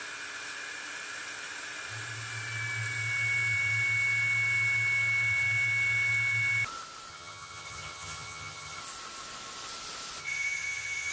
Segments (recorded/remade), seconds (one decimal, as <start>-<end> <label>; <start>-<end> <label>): 0.0-7.1 recorded; 7.1-8.8 remade; 8.8-10.2 recorded; 10.2-11.1 remade